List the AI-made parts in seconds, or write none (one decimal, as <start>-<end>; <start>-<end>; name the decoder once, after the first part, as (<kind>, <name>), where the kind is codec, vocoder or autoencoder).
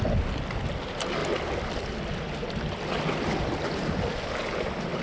none